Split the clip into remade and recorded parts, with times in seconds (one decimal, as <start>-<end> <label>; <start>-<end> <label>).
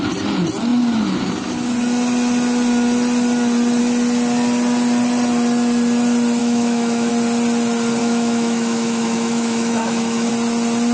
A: 0.0-6.4 recorded; 6.4-7.1 remade; 7.1-8.0 recorded; 8.0-10.3 remade; 10.3-10.9 recorded